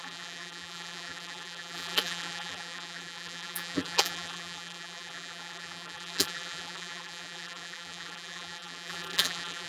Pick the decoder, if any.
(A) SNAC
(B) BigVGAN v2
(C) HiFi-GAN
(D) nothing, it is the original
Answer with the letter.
B